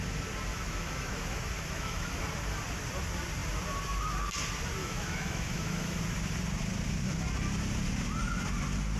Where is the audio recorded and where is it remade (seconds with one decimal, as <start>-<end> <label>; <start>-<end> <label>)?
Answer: 0.0-0.5 recorded; 0.5-2.2 remade; 2.2-4.8 recorded; 4.8-6.0 remade; 6.0-9.0 recorded